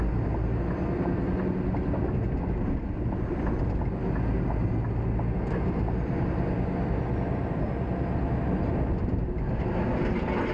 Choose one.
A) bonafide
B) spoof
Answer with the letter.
A